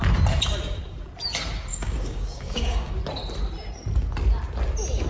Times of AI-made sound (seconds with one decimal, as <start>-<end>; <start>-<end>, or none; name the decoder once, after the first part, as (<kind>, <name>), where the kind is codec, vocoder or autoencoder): 1.7-2.9 (codec, DAC)